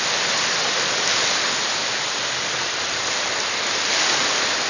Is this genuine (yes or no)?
yes